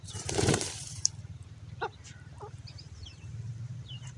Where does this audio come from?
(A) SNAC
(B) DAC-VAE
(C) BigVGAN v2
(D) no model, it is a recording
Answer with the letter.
C